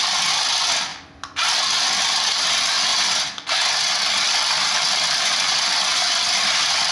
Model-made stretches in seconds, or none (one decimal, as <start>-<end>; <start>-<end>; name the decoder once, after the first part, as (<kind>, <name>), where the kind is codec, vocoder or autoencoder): none